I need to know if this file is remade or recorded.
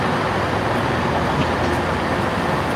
recorded